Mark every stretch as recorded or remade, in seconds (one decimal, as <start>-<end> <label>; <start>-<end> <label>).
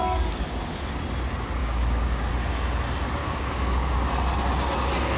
0.0-0.9 remade; 0.9-1.6 recorded; 1.6-2.3 remade; 2.3-3.2 recorded; 3.2-4.1 remade; 4.1-5.2 recorded